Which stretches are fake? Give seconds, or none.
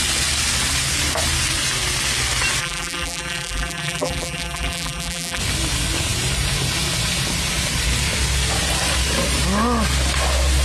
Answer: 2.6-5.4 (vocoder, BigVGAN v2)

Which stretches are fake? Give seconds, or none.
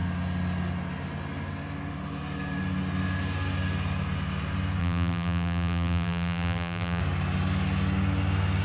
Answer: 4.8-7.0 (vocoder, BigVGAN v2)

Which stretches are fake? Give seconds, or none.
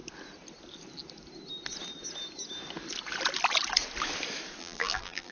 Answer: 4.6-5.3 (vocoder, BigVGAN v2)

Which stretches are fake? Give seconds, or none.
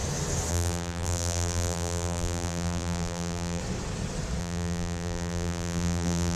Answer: 0.5-3.6 (vocoder, BigVGAN v2); 4.4-6.4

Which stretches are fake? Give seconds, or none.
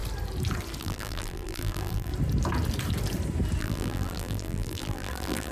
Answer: 0.8-2.1 (vocoder, BigVGAN v2); 3.6-5.5